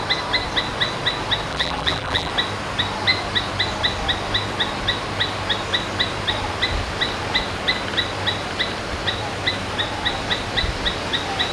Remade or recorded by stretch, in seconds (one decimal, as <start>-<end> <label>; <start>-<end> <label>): 0.0-1.5 recorded; 1.5-2.3 remade; 2.3-11.5 recorded